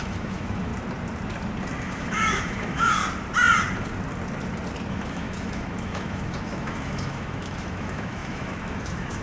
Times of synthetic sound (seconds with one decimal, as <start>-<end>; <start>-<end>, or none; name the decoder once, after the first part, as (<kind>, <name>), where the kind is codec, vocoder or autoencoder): 0.0-0.7 (autoencoder, DAC-VAE); 1.8-3.0; 4.9-9.2